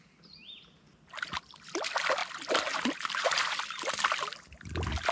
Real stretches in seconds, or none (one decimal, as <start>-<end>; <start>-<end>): 0.0-5.1